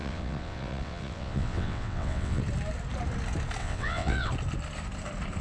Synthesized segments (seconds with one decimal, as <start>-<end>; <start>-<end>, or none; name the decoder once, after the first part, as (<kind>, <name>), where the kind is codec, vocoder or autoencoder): 0.0-2.4 (vocoder, WaveNeXt); 3.6-4.3